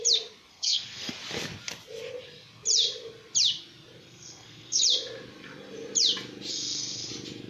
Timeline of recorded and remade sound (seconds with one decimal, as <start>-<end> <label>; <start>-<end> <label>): 0.0-0.5 recorded; 0.5-1.1 remade; 1.1-4.0 recorded; 4.0-4.8 remade; 4.8-6.5 recorded; 6.5-7.1 remade; 7.1-7.5 recorded